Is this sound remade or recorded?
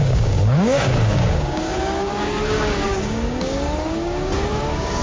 remade